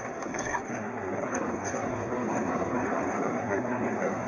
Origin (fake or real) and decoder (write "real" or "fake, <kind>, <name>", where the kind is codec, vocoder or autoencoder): fake, codec, SNAC